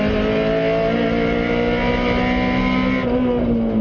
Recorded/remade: recorded